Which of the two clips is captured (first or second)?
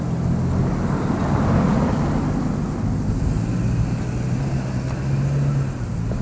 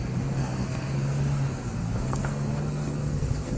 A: first